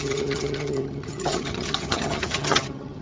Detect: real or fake fake